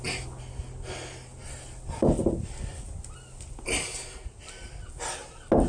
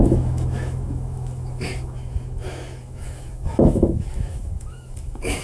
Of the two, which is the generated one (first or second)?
second